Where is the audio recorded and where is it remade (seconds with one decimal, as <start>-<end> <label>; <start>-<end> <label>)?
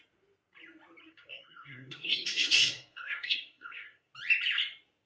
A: 0.0-1.0 recorded; 1.0-4.1 remade; 4.1-5.1 recorded